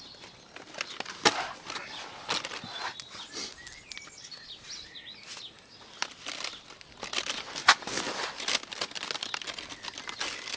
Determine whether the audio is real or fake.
real